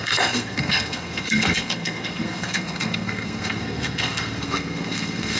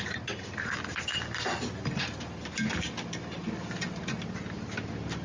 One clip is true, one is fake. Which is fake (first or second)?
first